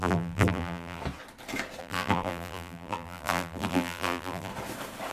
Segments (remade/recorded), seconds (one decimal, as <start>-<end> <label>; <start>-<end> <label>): 0.0-1.0 remade; 1.0-1.8 recorded; 1.8-4.5 remade; 4.5-5.1 recorded